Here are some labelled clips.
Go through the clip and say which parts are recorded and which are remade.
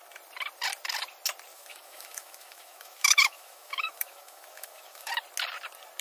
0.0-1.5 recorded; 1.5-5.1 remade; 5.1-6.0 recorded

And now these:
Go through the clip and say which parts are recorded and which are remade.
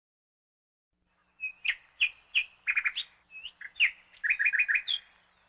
0.0-5.5 recorded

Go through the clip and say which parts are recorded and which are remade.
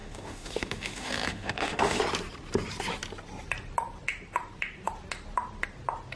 0.0-2.0 remade; 2.0-6.2 recorded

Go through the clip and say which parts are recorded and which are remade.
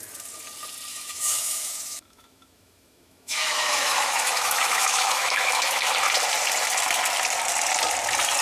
0.0-0.9 recorded; 0.9-5.9 remade; 5.9-8.4 recorded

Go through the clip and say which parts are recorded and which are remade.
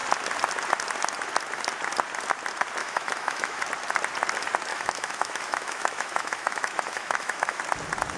0.0-2.8 recorded; 2.8-3.6 remade; 3.6-4.7 recorded; 4.7-7.6 remade; 7.6-8.2 recorded